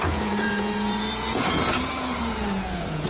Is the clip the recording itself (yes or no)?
no